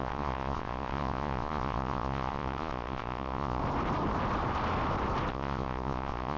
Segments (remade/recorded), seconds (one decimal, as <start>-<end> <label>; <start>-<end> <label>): 0.0-3.6 remade; 3.6-5.3 recorded; 5.3-6.4 remade